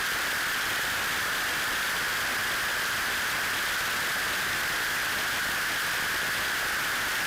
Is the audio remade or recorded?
recorded